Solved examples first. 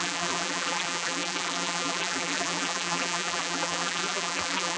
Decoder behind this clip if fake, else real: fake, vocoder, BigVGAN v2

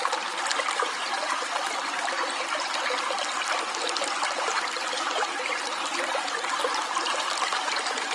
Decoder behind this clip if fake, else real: real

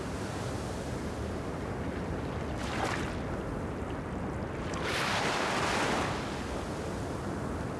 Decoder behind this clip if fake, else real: real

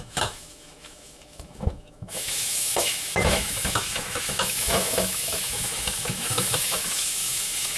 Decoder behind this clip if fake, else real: fake, autoencoder, DAC-VAE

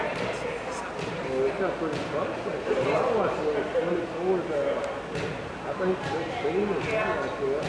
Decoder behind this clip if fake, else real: real